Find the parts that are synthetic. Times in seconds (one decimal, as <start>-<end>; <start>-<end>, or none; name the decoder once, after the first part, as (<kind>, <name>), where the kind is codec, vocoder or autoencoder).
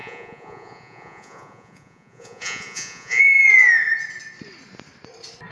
0.0-3.2 (vocoder, Vocos)